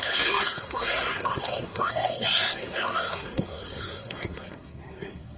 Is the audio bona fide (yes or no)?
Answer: no